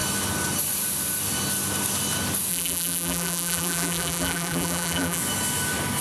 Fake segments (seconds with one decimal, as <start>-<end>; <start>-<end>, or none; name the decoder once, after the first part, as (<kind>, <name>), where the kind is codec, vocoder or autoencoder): 2.5-5.2 (vocoder, BigVGAN v2)